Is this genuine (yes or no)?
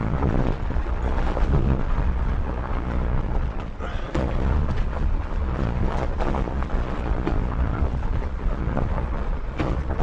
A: no